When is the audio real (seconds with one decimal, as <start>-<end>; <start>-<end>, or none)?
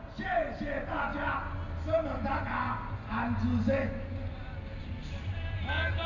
0.0-6.1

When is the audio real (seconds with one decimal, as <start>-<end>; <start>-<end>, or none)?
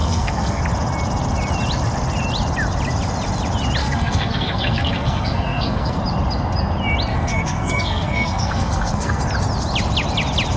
0.6-3.8; 6.0-7.1; 9.2-10.6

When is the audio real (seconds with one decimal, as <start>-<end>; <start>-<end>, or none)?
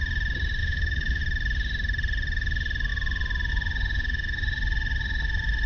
0.0-0.6; 1.2-5.7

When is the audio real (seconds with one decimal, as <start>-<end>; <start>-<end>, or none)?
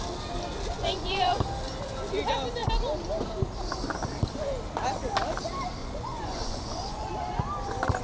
0.0-0.7; 1.4-5.8; 7.1-8.0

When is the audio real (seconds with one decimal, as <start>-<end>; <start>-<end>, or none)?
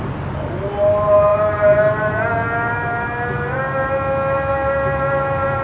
0.0-5.6